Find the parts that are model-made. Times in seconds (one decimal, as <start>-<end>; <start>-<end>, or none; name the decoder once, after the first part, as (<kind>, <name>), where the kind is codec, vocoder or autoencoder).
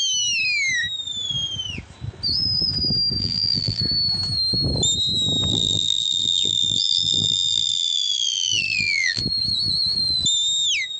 3.2-3.8 (vocoder, BigVGAN v2); 5.5-9.2